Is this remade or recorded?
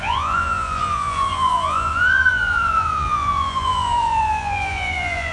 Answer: remade